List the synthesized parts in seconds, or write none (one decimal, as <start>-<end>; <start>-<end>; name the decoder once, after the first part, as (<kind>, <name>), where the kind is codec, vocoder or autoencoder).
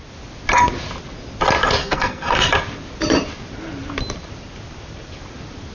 1.8-2.5 (codec, SNAC)